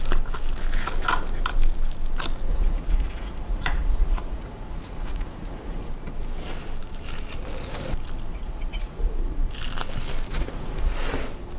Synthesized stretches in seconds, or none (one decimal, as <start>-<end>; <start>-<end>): 2.5-5.9; 8.3-9.5; 10.3-10.9